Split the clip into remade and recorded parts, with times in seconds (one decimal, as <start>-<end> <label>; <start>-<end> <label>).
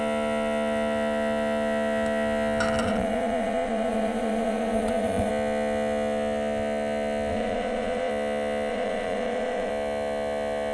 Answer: 0.0-2.8 recorded; 2.8-5.3 remade; 5.3-7.3 recorded; 7.3-8.1 remade; 8.1-8.7 recorded; 8.7-9.7 remade; 9.7-10.7 recorded